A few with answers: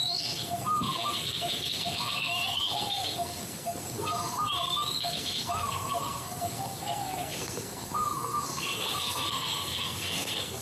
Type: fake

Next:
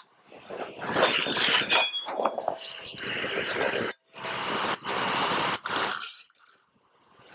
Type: fake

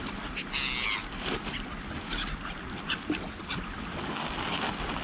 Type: real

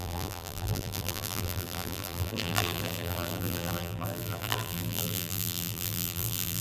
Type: fake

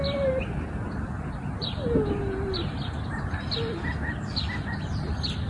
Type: real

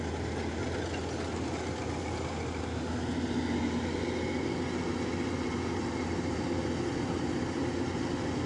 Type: real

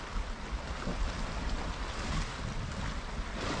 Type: real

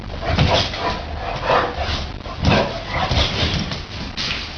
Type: real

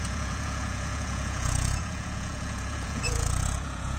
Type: fake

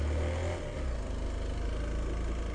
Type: real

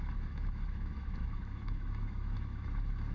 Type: fake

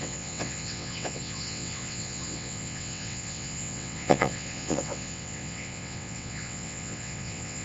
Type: fake